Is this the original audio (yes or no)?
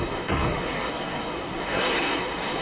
no